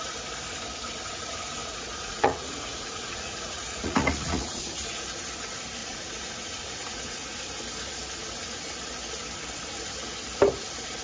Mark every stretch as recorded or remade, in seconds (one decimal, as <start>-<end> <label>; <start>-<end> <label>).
0.0-1.6 recorded; 1.6-5.1 remade; 5.1-5.8 recorded; 5.8-7.2 remade; 7.2-11.0 recorded